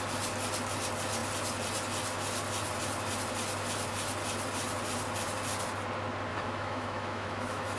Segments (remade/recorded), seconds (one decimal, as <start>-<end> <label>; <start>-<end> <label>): 0.0-6.3 recorded; 6.3-7.8 remade